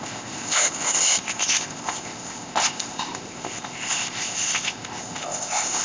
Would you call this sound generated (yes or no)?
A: yes